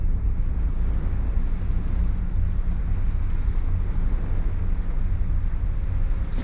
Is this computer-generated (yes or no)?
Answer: no